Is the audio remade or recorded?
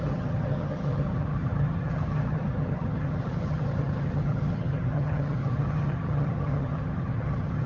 remade